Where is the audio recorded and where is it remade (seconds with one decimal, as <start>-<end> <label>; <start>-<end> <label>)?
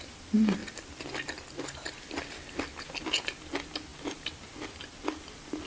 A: 0.0-0.6 recorded; 0.6-2.3 remade; 2.3-5.7 recorded